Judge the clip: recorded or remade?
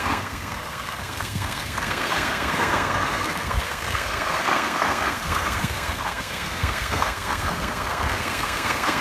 remade